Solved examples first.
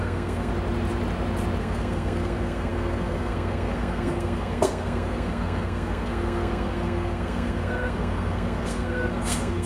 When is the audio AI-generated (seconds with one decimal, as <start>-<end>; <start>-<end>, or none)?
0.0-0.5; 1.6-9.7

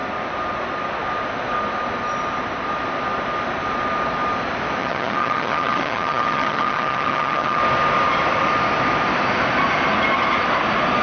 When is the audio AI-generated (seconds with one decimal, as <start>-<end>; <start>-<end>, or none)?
4.8-7.6

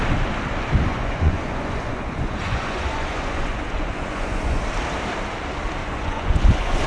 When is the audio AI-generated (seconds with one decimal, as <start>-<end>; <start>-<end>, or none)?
0.9-4.6; 5.8-6.9

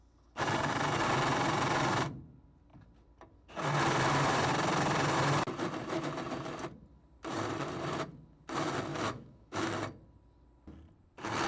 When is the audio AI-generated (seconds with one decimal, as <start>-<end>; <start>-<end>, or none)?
8.9-9.7

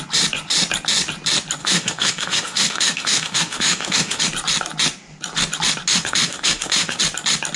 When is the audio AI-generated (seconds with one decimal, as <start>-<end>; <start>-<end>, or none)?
1.6-4.2; 5.9-7.0